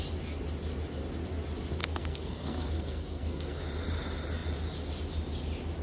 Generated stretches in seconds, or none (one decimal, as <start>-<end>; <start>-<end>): 1.8-3.6